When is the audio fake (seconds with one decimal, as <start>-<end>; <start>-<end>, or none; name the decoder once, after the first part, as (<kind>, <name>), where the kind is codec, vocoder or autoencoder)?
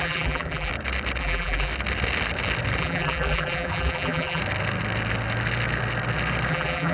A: 0.0-0.7 (vocoder, BigVGAN v2); 1.2-1.7; 2.8-4.4; 6.5-6.9